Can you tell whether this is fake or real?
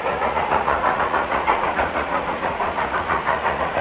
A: fake